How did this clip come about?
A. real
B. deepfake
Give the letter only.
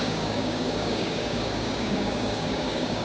B